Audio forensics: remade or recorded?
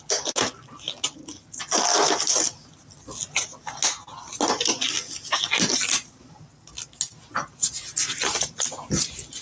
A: recorded